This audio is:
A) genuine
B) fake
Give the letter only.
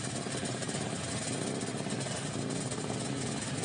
A